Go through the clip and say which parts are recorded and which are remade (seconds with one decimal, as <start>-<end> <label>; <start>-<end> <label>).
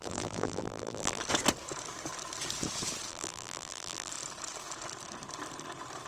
0.0-1.2 remade; 1.2-3.1 recorded; 3.1-4.1 remade; 4.1-6.1 recorded